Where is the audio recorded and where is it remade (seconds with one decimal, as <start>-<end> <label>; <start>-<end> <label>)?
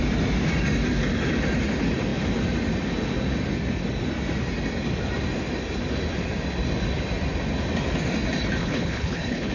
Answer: 0.0-8.6 recorded; 8.6-9.5 remade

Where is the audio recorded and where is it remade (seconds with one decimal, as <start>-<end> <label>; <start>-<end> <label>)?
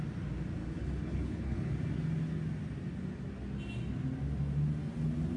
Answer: 0.0-0.6 recorded; 0.6-1.7 remade; 1.7-5.4 recorded